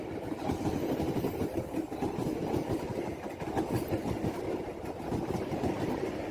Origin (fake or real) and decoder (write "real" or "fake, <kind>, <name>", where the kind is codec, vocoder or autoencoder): real